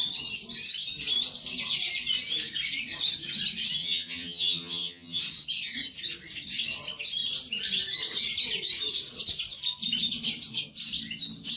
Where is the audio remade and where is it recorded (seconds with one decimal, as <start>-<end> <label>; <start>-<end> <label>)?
0.0-3.8 recorded; 3.8-5.2 remade; 5.2-11.6 recorded